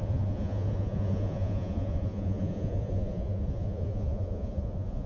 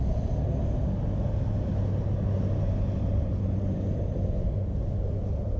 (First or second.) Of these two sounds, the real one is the second